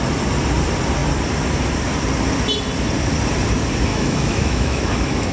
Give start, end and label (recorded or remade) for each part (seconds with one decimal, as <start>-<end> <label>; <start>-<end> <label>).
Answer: 0.0-3.9 recorded; 3.9-5.3 remade